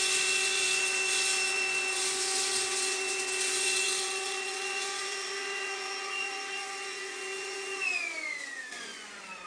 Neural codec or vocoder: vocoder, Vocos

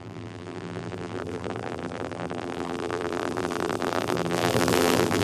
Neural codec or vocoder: vocoder, BigVGAN v2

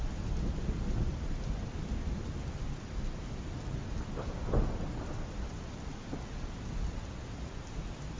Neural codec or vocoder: none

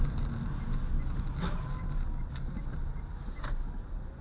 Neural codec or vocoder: none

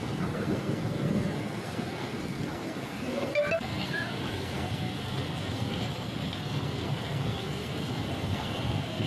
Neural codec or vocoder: codec, SNAC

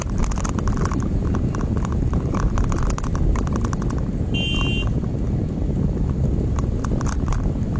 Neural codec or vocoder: none